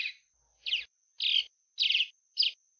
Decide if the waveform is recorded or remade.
recorded